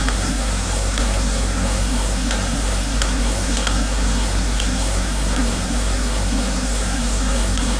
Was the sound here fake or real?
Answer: fake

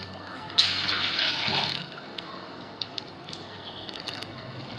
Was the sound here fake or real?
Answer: fake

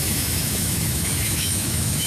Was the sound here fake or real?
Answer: fake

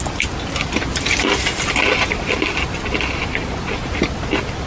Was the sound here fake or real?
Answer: real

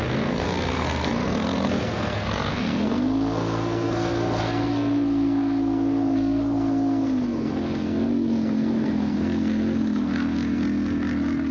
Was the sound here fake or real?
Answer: fake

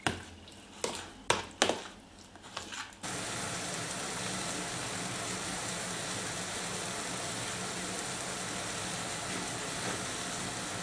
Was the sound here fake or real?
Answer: real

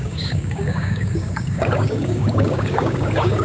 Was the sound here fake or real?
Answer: fake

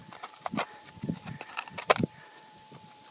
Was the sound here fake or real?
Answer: fake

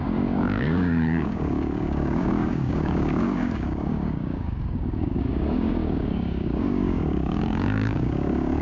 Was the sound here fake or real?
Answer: fake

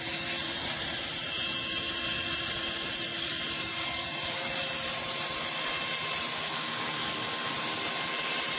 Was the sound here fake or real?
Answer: fake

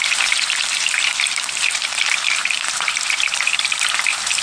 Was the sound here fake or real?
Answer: fake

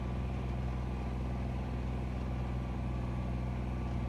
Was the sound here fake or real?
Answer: real